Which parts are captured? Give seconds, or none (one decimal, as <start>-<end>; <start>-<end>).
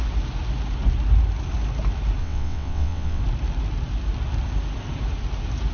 0.0-2.2; 3.2-5.7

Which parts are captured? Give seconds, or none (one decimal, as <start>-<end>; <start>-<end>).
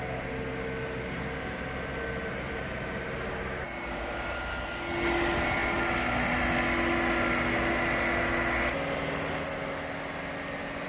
0.0-10.9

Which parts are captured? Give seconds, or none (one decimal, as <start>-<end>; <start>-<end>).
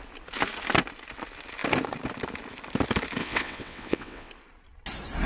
0.0-3.2; 4.3-5.3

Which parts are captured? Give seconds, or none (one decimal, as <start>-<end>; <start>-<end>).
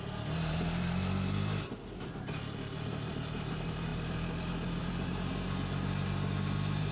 0.0-6.9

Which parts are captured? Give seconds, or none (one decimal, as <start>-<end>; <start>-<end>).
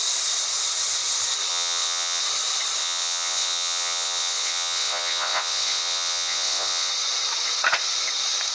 0.0-1.5; 2.2-2.8; 6.9-8.5